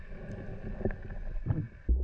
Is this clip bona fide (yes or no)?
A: yes